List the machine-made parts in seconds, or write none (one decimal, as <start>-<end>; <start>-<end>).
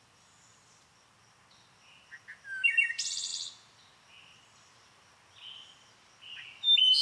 none